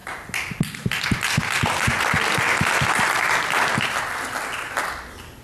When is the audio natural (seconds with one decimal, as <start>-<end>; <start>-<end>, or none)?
0.0-5.4